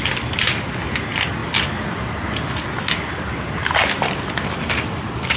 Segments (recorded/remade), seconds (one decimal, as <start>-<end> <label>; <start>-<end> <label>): 0.0-5.4 recorded